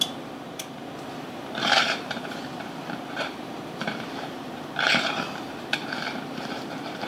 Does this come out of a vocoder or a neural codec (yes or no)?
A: yes